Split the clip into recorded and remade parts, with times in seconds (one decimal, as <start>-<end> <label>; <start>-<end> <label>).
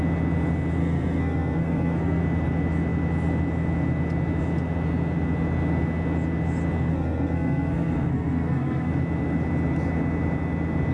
0.0-0.8 recorded; 0.8-2.2 remade; 2.2-6.9 recorded; 6.9-8.9 remade; 8.9-10.9 recorded